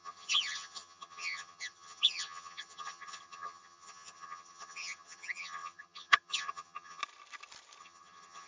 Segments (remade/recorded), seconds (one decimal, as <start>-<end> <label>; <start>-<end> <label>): 0.0-7.0 remade; 7.0-7.8 recorded; 7.8-8.5 remade